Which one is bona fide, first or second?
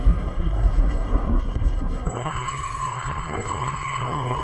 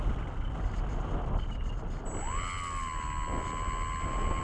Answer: second